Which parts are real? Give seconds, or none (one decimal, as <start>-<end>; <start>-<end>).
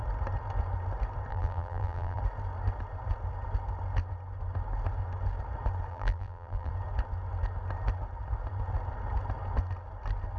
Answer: 0.0-1.3; 2.2-5.9; 6.7-10.4